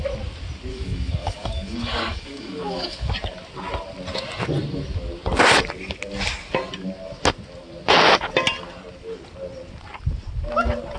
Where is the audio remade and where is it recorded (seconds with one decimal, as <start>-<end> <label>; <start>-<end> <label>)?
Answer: 0.0-0.7 recorded; 0.7-3.1 remade; 3.1-11.0 recorded